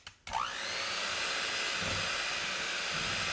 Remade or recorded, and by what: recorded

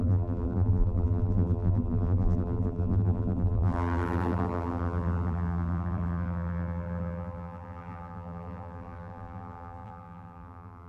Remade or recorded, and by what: remade, vocoder, BigVGAN v2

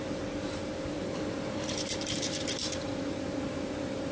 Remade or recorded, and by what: remade, vocoder, BigVGAN v2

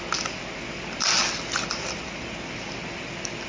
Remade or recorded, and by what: remade, vocoder, BigVGAN v2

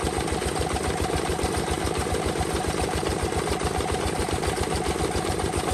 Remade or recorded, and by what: recorded